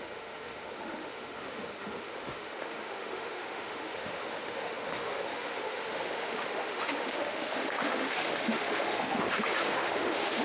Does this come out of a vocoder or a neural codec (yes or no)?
yes